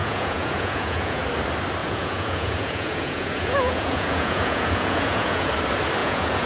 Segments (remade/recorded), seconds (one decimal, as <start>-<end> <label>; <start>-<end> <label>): 0.0-1.2 remade; 1.2-1.8 recorded; 1.8-5.5 remade; 5.5-6.0 recorded; 6.0-6.5 remade